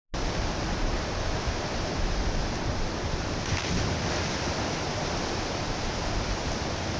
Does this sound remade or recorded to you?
recorded